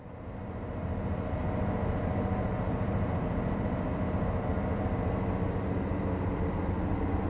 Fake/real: real